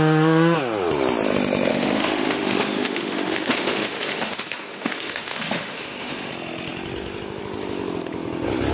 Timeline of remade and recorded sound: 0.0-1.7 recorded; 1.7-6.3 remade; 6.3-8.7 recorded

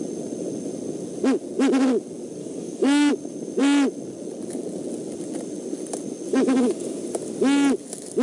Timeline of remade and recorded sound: 0.0-2.4 recorded; 2.4-3.1 remade; 3.1-6.3 recorded; 6.3-7.0 remade; 7.0-8.2 recorded

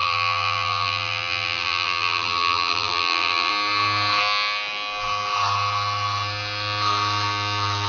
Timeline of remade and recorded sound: 0.0-3.5 remade; 3.5-7.9 recorded